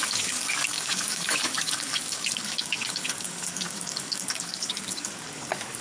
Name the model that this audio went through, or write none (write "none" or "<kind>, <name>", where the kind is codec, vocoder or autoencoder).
codec, DAC